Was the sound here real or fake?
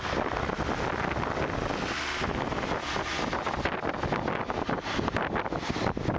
real